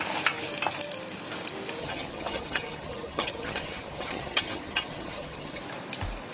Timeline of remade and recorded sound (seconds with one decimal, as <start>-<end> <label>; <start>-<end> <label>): 0.0-1.8 recorded; 1.8-5.6 remade; 5.6-6.3 recorded